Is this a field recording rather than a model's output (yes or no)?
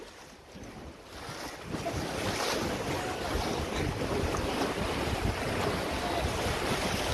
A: yes